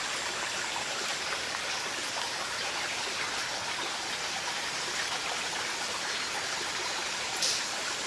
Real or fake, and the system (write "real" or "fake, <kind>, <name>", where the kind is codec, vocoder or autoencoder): real